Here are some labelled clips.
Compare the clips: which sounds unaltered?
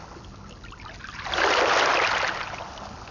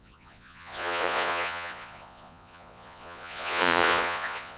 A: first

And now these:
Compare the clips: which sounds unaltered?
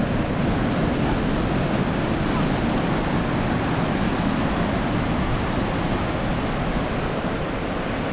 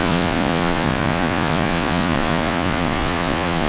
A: first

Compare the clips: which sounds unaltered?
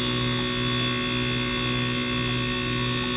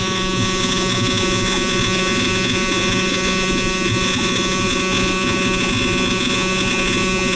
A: first